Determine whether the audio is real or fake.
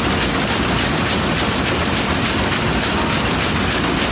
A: real